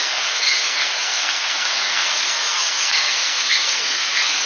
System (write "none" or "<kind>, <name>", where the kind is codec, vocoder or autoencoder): codec, SNAC